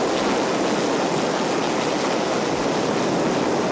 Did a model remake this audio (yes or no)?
no